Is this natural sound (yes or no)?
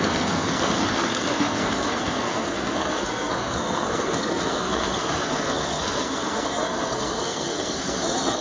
no